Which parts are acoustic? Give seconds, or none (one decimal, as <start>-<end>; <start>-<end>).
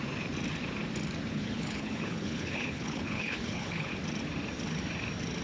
0.0-1.3; 3.9-5.4